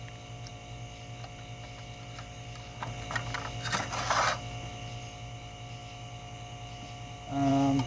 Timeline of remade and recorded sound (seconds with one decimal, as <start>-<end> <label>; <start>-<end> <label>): 0.0-7.9 recorded